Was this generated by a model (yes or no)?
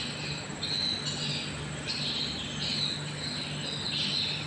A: no